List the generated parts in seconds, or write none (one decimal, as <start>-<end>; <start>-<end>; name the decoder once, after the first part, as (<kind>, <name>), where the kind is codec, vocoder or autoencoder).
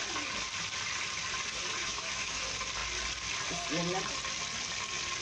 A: 1.8-2.4 (autoencoder, DAC-VAE)